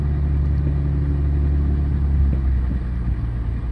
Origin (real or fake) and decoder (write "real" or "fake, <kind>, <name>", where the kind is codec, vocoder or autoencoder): real